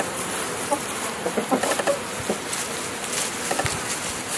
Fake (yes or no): no